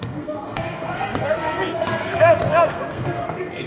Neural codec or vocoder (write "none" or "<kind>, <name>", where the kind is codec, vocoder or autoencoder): codec, SNAC